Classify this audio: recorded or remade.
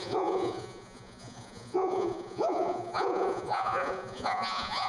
remade